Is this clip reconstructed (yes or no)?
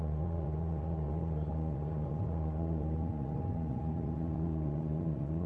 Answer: yes